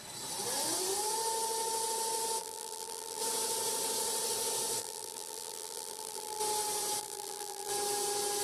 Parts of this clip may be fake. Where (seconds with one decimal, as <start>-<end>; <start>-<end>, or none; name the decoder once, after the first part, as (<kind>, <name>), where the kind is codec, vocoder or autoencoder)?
2.4-3.2 (vocoder, BigVGAN v2); 4.8-6.4; 7.0-7.7

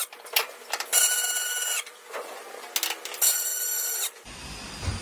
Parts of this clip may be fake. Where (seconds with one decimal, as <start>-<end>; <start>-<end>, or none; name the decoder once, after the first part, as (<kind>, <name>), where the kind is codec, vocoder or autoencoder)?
3.5-4.2 (vocoder, BigVGAN v2)

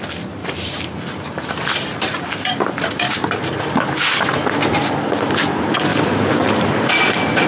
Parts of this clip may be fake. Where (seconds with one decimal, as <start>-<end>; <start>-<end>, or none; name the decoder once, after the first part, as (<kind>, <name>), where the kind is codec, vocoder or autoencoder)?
0.4-4.5 (vocoder, BigVGAN v2); 5.9-6.9

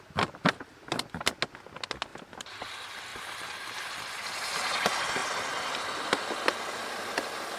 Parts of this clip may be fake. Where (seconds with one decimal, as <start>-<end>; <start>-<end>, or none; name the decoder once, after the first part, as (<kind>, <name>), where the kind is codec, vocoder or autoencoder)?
2.1-2.7 (vocoder, BigVGAN v2); 3.1-3.6

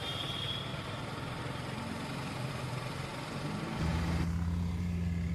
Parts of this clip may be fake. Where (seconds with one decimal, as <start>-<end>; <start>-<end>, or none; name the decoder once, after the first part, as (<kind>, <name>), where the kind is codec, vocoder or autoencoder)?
0.7-2.5 (vocoder, BigVGAN v2)